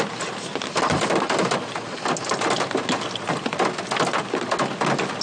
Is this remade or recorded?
recorded